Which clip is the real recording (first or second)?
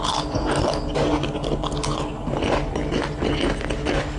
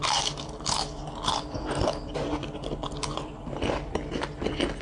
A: first